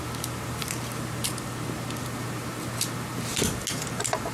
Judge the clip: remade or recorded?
recorded